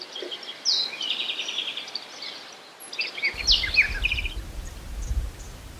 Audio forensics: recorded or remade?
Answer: recorded